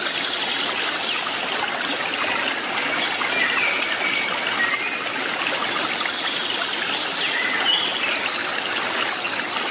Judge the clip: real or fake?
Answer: real